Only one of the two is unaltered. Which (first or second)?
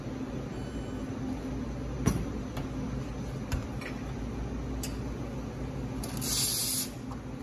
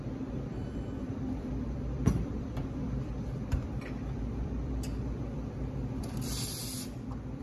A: first